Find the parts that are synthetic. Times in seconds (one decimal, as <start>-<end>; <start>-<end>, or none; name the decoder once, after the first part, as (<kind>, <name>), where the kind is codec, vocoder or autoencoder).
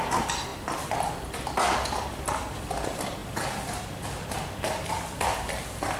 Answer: none